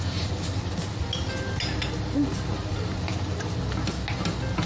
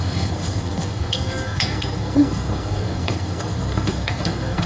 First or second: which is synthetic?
second